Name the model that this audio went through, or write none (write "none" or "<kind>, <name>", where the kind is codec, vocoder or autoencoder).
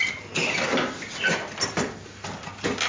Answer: none